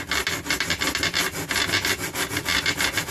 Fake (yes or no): no